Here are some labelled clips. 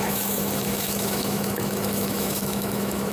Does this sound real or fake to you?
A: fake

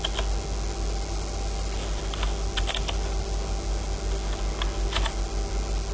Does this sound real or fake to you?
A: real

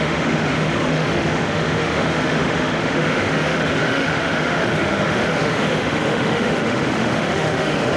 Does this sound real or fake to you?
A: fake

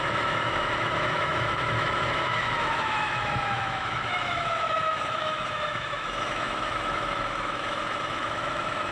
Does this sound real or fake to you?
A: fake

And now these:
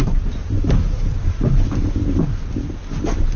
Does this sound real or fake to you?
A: real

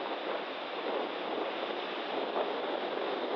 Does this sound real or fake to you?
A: real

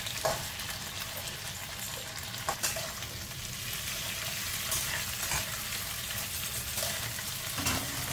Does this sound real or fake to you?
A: real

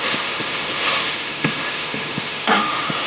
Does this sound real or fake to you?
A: fake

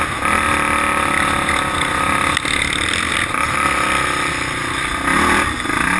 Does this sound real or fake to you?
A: real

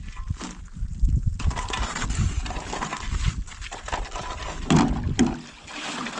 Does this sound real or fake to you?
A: real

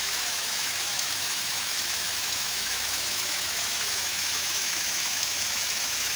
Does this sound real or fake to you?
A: fake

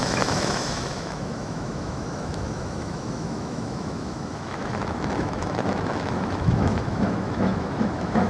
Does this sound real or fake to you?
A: fake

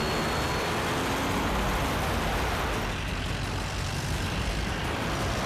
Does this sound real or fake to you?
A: real